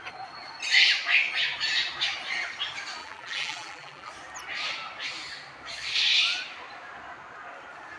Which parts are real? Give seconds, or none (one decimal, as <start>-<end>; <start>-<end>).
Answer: 0.0-3.0; 4.1-8.0